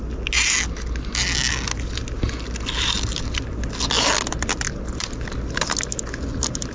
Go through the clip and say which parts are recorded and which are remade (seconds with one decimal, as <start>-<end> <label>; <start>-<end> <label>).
0.0-6.7 recorded